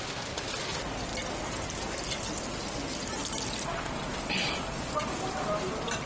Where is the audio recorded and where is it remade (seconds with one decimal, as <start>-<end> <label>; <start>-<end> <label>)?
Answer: 0.0-1.1 remade; 1.1-3.2 recorded; 3.2-6.1 remade